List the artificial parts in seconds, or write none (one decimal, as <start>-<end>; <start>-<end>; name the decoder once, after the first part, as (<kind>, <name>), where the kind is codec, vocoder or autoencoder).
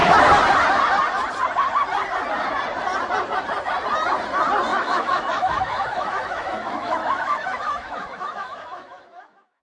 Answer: 4.7-9.6 (autoencoder, DAC-VAE)